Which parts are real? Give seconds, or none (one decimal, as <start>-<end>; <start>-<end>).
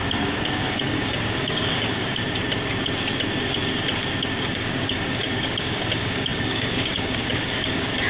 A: 2.2-4.5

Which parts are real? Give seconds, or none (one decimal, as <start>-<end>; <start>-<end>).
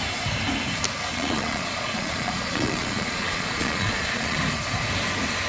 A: 0.0-1.1; 4.4-5.5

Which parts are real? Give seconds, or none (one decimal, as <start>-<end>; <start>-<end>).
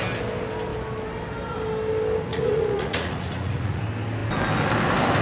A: 0.0-2.3; 3.8-5.2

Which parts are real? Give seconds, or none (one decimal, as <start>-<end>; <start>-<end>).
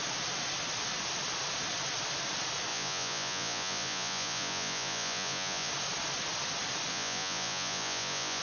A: 0.0-2.7; 5.7-6.9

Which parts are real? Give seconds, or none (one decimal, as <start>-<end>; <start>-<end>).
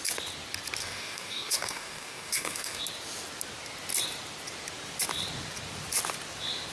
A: 0.0-0.8; 2.8-6.7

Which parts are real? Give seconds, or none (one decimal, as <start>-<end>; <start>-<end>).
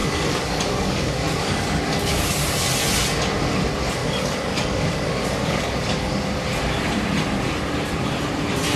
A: 2.4-4.0; 6.2-8.8